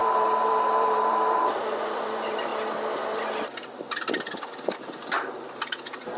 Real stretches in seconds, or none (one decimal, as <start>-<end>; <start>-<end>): 2.5-6.2